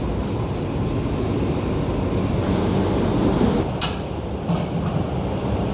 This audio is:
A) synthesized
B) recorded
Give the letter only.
B